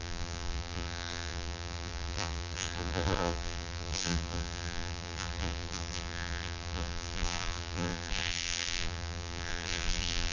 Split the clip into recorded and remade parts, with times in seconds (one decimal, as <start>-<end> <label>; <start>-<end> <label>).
0.0-10.3 remade